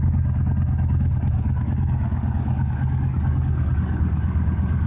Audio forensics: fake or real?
fake